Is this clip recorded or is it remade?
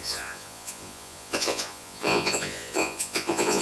remade